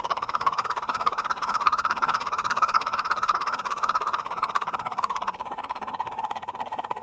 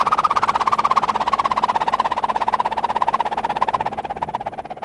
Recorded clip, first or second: second